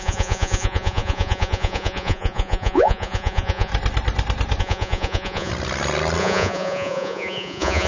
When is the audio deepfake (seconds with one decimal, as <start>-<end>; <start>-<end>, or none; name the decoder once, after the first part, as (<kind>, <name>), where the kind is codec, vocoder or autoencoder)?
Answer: 0.0-3.7 (vocoder, Vocos); 4.6-5.5; 6.2-7.9